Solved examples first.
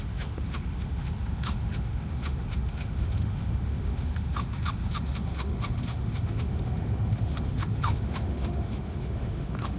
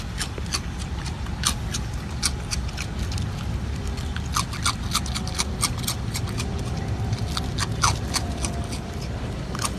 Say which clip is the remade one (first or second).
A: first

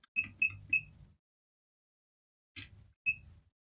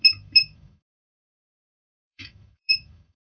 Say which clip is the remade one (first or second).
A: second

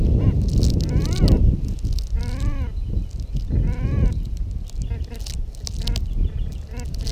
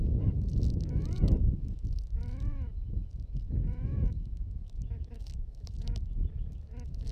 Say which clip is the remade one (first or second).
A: second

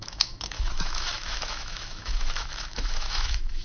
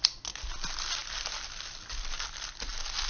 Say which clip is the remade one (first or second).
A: first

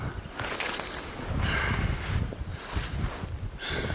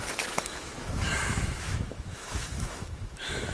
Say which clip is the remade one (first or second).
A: second